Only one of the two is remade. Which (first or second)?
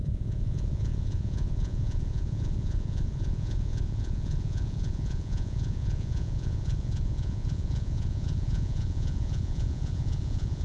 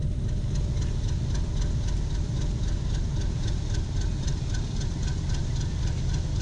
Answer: first